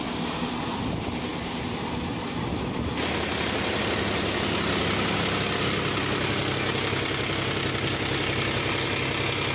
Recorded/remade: recorded